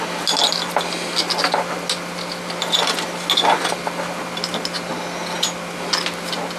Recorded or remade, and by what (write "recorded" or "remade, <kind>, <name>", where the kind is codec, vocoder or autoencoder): recorded